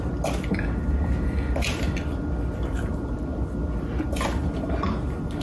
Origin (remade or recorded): recorded